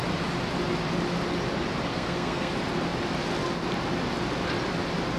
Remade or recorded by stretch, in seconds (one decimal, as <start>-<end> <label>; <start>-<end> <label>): 0.0-1.9 recorded; 1.9-2.5 remade; 2.5-5.2 recorded